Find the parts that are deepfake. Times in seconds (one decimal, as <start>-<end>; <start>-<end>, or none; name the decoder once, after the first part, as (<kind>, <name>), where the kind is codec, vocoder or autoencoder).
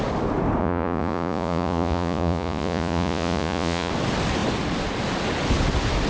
0.6-3.9 (vocoder, Vocos)